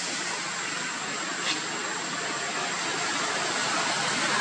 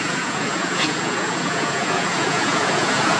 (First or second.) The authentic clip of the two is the first